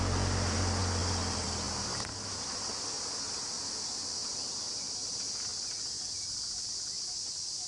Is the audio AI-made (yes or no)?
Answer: no